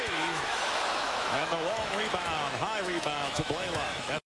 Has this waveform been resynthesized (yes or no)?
yes